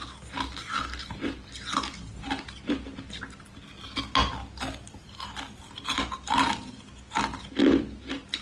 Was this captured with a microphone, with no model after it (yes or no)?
yes